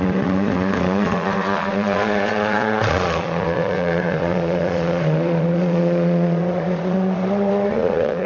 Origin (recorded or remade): remade